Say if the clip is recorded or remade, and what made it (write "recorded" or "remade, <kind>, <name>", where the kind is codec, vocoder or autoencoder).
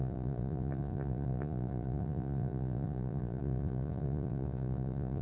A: remade, vocoder, Vocos